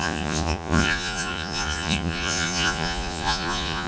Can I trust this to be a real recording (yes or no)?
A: no